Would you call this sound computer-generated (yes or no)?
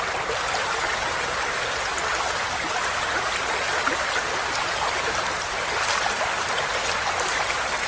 no